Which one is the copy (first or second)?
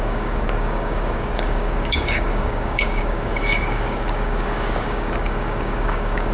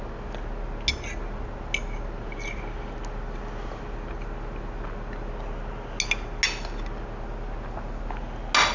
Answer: first